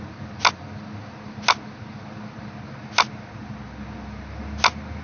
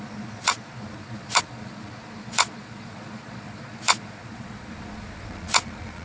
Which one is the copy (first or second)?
second